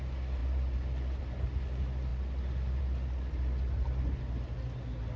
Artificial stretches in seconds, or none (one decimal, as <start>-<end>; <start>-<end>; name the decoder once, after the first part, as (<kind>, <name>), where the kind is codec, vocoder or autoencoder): none